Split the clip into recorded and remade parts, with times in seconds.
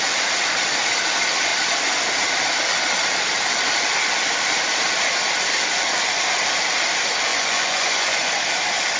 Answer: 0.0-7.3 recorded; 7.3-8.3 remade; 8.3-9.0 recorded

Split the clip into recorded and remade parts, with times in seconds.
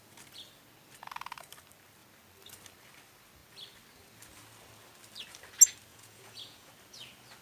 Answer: 0.0-5.9 recorded; 5.9-6.7 remade; 6.7-7.4 recorded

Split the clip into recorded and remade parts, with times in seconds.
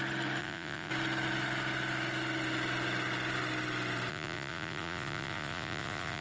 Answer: 0.0-0.4 recorded; 0.4-0.9 remade; 0.9-4.1 recorded; 4.1-6.2 remade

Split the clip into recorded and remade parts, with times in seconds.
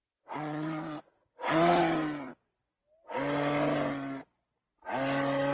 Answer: 0.0-1.8 remade; 1.8-5.5 recorded